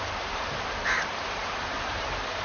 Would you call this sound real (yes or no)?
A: no